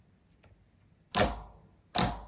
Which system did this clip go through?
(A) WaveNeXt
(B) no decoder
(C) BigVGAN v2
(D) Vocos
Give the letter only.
B